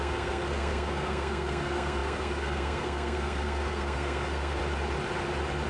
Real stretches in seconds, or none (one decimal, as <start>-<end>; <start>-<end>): 4.6-5.7